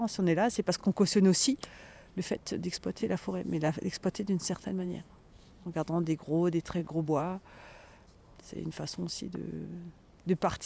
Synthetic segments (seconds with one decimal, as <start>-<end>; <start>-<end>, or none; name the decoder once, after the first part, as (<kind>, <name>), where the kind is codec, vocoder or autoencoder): 3.0-5.5 (vocoder, Vocos); 6.8-7.6